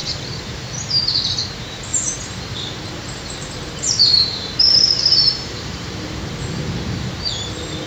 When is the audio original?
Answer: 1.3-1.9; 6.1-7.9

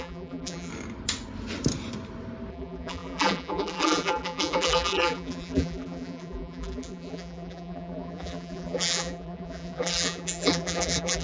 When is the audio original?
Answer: 0.7-2.5